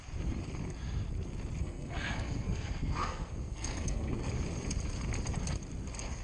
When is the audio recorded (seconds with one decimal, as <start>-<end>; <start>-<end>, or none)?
0.0-1.6; 4.3-6.2